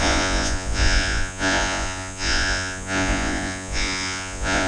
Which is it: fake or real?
fake